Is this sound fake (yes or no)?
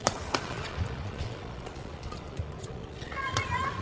yes